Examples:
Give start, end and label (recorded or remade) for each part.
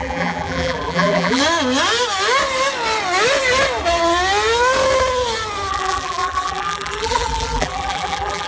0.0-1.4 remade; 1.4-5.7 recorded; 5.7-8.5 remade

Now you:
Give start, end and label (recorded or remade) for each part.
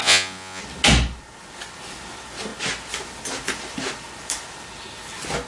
0.0-0.6 remade; 0.6-5.5 recorded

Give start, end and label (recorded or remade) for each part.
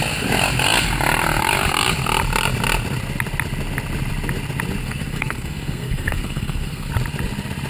0.0-4.8 recorded; 4.8-6.9 remade; 6.9-7.7 recorded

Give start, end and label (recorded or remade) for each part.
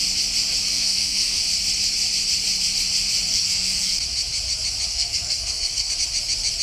0.0-0.7 recorded; 0.7-1.4 remade; 1.4-3.3 recorded; 3.3-4.0 remade; 4.0-4.9 recorded; 4.9-5.9 remade; 5.9-6.6 recorded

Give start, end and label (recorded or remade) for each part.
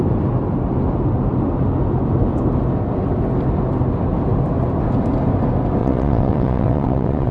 0.0-5.8 recorded; 5.8-7.3 remade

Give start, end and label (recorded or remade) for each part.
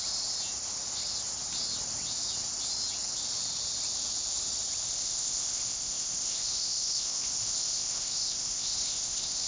0.0-4.8 recorded; 4.8-9.5 remade